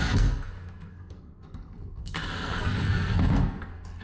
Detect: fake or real fake